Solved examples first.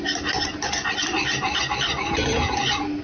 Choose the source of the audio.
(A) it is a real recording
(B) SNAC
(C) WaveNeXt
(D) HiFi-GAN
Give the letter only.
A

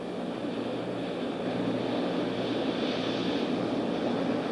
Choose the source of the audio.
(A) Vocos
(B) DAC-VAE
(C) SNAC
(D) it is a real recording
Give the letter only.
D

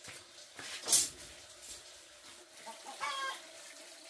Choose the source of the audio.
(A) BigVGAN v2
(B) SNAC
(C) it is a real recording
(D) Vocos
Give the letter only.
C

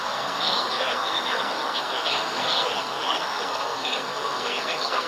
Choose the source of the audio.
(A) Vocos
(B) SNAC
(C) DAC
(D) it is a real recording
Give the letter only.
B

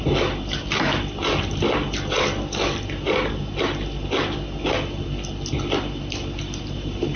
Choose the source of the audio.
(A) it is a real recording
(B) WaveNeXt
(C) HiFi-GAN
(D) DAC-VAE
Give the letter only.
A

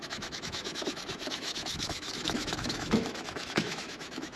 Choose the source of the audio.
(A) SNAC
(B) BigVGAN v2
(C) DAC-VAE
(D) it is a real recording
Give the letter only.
C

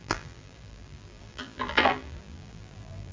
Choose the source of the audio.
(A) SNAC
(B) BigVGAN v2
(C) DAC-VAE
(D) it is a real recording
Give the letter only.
B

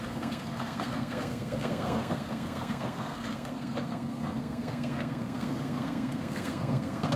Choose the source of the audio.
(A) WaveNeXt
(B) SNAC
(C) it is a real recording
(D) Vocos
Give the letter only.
B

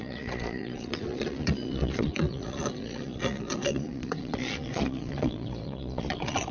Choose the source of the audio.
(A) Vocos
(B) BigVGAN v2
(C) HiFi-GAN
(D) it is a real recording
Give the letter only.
A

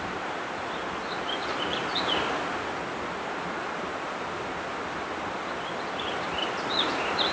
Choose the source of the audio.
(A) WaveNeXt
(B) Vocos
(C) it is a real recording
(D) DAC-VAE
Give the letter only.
C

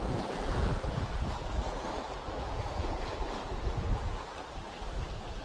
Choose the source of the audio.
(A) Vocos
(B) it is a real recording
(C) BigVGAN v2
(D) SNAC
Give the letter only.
C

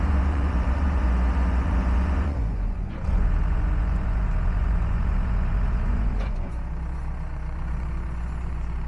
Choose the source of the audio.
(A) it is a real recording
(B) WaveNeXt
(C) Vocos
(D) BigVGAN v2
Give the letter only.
C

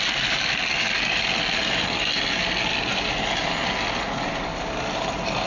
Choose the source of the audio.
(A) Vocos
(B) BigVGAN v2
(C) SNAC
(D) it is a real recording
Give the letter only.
D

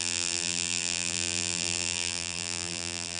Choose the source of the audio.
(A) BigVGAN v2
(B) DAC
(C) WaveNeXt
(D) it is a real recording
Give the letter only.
A